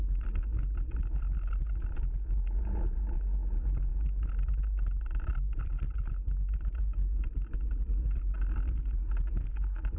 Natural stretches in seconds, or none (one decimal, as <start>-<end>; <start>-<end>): 0.0-10.0